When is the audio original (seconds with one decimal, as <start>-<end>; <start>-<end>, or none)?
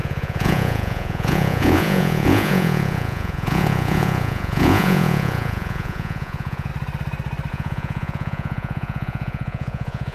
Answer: 6.7-7.5